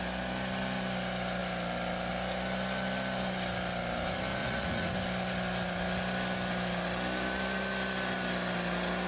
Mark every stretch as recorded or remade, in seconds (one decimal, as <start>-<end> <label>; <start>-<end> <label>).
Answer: 0.0-4.4 recorded; 4.4-4.9 remade; 4.9-9.1 recorded